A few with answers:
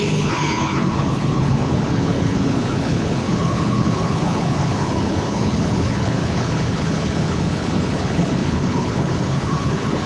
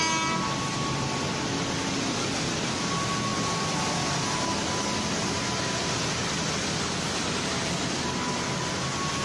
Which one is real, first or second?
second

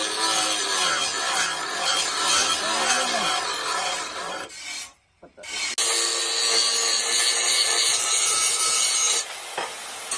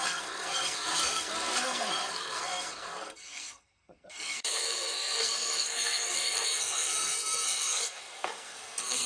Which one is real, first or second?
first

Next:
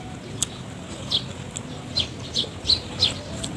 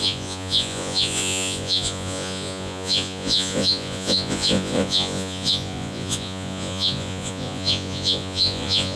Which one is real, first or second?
first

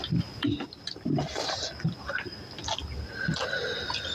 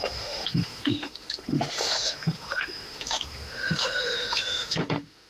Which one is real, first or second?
first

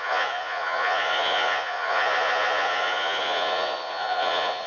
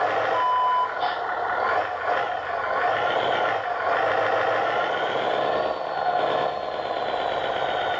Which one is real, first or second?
second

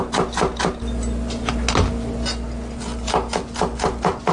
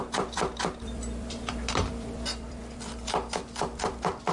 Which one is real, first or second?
first